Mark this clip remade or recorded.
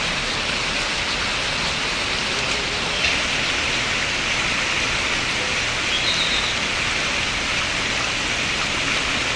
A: recorded